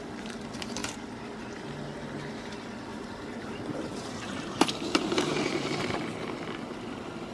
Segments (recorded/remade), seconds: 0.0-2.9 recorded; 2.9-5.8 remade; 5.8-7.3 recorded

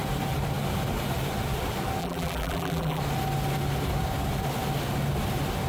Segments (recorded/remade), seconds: 0.0-2.0 recorded; 2.0-3.0 remade; 3.0-5.7 recorded